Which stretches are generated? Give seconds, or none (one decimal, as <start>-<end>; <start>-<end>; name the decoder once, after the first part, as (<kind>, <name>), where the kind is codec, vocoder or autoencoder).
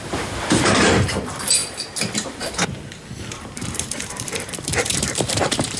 0.0-1.6 (vocoder, BigVGAN v2); 3.3-5.8